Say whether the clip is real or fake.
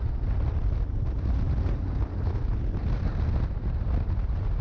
real